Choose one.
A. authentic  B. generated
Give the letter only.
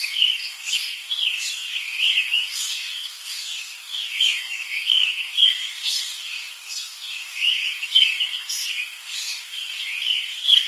B